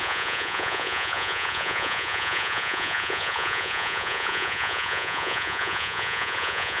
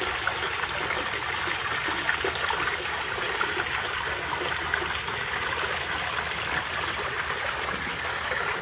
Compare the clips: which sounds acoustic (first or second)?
second